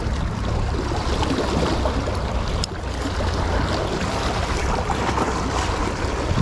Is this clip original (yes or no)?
yes